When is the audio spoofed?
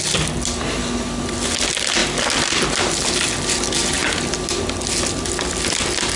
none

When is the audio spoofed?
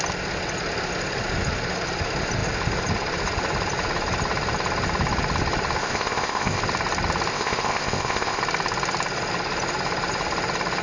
5.8-6.6 (codec, ZipCodec); 7.3-8.4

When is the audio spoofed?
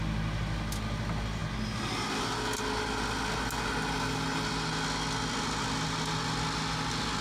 none